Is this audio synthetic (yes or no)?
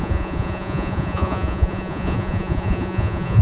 yes